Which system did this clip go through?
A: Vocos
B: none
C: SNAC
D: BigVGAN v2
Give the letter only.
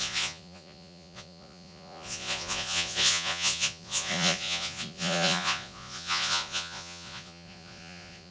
A